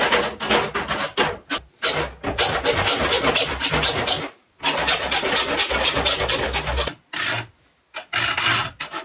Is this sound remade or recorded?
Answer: recorded